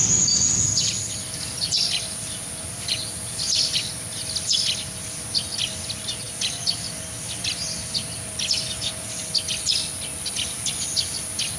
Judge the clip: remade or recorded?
recorded